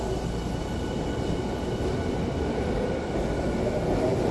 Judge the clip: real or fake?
real